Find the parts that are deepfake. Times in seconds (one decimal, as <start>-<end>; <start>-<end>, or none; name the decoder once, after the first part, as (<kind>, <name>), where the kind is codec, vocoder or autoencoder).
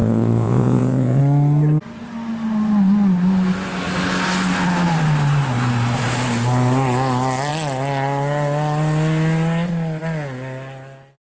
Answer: 0.0-1.2 (vocoder, Vocos)